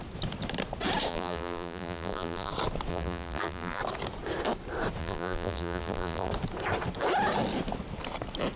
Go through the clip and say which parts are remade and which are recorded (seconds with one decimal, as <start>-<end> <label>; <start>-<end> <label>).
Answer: 0.0-1.1 recorded; 1.1-2.5 remade; 2.5-2.9 recorded; 2.9-3.8 remade; 3.8-5.0 recorded; 5.0-6.3 remade; 6.3-8.6 recorded